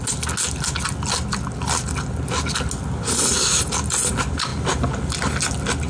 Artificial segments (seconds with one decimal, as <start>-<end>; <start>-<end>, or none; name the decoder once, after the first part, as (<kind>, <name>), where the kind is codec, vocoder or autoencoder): none

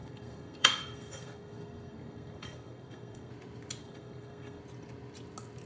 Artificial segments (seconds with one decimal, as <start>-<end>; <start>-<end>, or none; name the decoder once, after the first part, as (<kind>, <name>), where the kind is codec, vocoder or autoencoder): 0.0-3.3 (codec, SNAC); 3.8-4.6

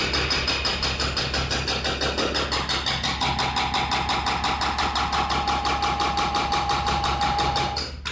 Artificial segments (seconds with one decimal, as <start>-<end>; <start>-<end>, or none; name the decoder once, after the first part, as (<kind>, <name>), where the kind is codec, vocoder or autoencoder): none

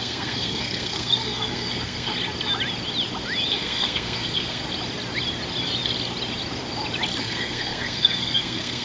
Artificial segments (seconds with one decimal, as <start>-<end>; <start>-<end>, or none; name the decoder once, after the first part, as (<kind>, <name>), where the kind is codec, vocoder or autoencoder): 0.0-2.1 (codec, SNAC); 3.5-4.6; 7.2-8.8

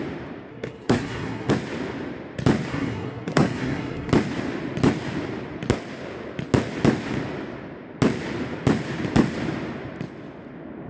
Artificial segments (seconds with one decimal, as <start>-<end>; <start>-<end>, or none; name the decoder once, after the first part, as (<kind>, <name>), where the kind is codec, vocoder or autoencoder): 0.5-1.5 (codec, SNAC); 2.7-4.1

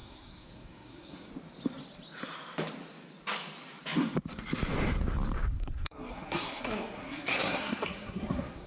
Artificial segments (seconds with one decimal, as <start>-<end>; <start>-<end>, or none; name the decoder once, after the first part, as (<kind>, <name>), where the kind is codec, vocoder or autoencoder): 0.0-1.3 (codec, SNAC); 5.5-8.7

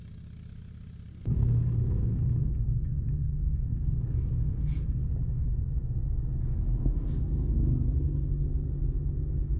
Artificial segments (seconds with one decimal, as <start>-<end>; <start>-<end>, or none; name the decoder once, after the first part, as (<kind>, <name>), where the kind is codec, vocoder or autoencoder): 1.1-5.0 (codec, SNAC); 6.8-7.6